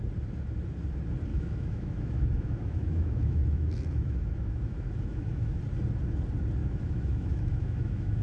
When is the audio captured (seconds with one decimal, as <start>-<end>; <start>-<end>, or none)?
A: 0.0-1.3; 5.6-6.6